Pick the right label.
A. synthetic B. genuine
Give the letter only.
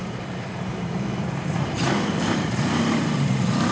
A